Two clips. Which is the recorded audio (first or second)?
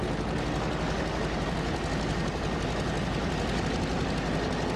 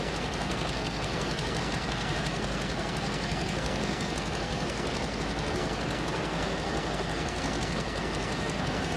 first